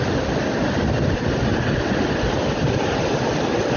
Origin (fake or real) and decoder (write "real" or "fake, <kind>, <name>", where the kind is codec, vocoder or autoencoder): real